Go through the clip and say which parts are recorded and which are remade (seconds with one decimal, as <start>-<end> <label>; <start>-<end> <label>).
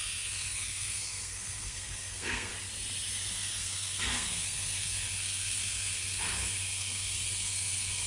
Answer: 0.0-2.5 remade; 2.5-3.3 recorded; 3.3-8.1 remade